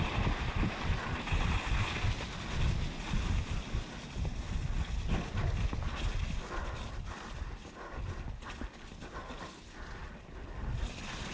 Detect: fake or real real